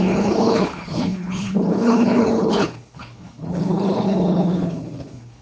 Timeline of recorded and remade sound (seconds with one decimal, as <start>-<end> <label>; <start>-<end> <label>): 0.0-5.4 remade